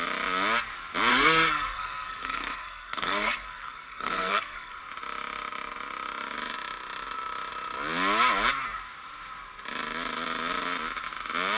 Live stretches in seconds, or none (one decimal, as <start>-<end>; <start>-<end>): 0.0-1.1; 4.8-11.6